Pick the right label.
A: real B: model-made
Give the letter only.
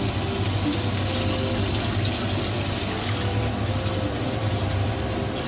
A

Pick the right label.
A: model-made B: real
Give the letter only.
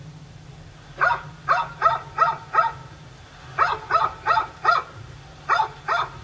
B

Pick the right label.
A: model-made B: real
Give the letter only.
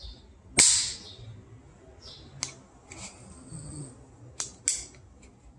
B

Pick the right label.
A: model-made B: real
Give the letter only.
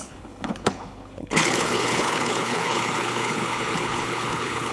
A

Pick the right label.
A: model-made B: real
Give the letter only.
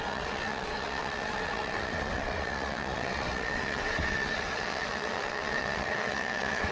A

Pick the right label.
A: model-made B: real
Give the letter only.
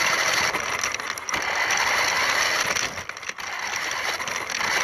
B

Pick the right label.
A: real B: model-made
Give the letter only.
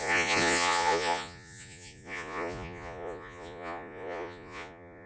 B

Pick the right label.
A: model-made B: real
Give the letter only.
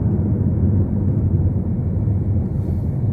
B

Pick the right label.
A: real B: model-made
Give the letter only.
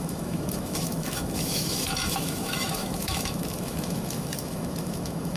B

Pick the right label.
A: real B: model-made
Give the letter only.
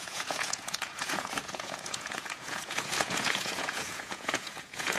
B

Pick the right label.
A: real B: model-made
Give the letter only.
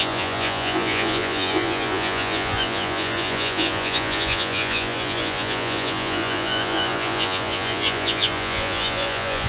B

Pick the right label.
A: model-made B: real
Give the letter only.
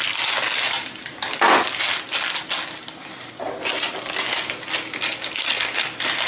B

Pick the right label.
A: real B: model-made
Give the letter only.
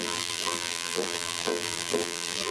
B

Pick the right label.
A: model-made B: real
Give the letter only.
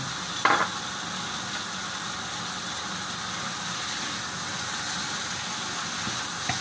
B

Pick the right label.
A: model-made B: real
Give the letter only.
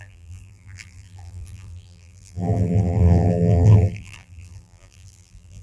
A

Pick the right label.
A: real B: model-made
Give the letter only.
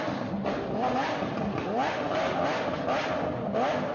A